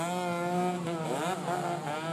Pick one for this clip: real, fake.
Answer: real